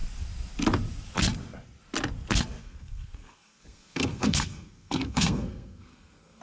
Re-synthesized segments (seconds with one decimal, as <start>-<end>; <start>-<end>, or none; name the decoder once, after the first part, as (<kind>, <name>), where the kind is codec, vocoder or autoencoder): 2.6-6.4 (codec, SNAC)